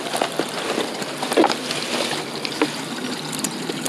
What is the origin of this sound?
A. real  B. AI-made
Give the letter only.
A